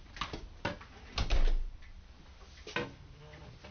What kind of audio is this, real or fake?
real